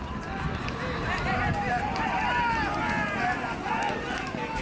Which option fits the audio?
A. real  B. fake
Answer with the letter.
A